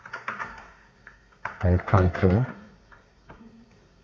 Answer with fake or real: fake